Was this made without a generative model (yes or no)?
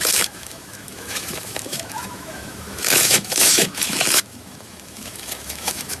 no